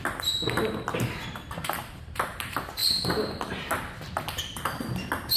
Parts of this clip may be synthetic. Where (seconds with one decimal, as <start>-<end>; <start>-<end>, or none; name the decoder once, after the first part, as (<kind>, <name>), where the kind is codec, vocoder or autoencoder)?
none